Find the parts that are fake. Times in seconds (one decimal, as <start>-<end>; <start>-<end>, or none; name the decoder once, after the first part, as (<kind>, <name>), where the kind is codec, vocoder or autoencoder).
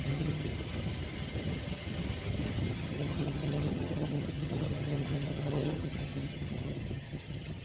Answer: 0.0-0.5 (vocoder, HiFi-GAN); 2.7-7.6